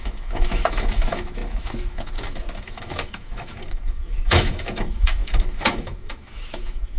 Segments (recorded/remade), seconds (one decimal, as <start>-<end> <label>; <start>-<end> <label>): 0.0-7.0 remade